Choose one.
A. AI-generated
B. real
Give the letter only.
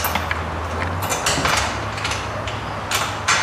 B